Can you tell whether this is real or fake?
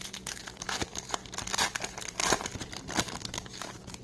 fake